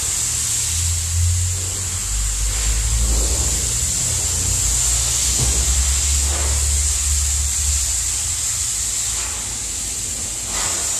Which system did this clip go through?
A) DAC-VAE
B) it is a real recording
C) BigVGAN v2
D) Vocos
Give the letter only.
B